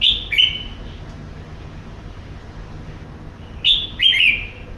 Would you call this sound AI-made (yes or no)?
no